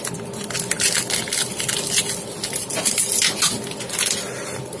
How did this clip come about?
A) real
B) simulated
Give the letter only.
A